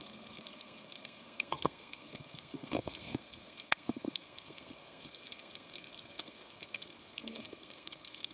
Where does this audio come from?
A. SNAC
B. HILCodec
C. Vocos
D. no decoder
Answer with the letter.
A